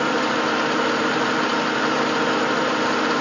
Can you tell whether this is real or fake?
real